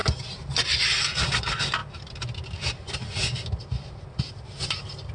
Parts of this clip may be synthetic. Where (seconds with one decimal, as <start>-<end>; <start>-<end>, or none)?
1.8-5.1